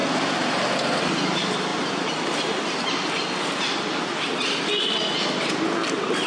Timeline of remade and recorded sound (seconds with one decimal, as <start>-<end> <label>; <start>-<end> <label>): 0.0-6.3 recorded